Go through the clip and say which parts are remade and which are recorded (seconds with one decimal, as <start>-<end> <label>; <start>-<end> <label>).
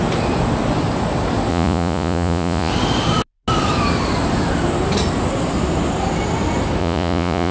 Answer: 0.0-1.5 recorded; 1.5-2.7 remade; 2.7-6.8 recorded; 6.8-7.5 remade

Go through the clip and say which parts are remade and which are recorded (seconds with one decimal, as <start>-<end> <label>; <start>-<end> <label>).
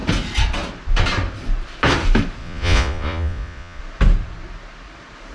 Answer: 0.0-2.4 recorded; 2.4-3.8 remade; 3.8-5.3 recorded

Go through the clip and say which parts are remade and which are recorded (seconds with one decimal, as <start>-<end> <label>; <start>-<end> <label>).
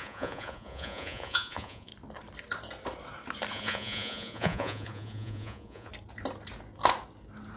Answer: 0.0-1.9 remade; 1.9-3.5 recorded; 3.5-5.9 remade; 5.9-7.6 recorded